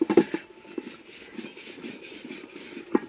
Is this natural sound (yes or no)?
yes